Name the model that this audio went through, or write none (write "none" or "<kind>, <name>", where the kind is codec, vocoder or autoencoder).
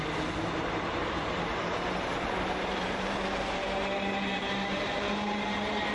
vocoder, BigVGAN v2